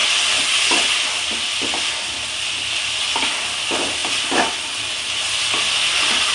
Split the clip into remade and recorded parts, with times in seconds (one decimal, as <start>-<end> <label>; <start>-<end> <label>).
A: 0.0-6.3 recorded